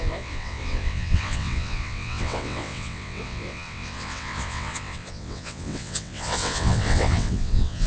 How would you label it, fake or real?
fake